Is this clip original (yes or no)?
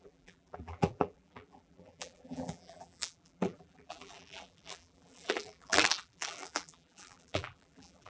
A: no